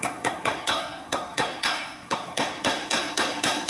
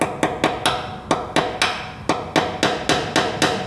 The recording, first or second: second